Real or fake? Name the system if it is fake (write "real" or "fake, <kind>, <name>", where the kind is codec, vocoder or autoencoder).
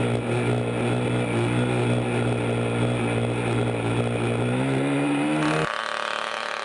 real